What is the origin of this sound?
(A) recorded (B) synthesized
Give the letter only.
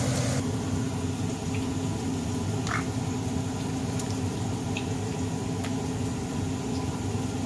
A